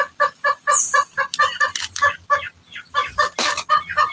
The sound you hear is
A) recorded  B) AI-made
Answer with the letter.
A